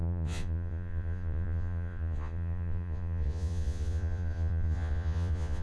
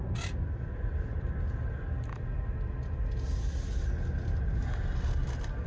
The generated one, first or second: first